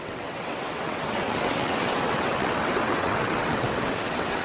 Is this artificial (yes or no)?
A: yes